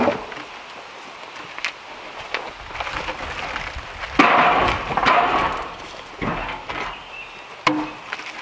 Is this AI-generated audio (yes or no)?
no